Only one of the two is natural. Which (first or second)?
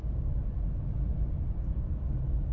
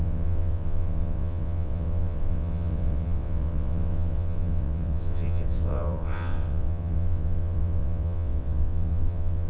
first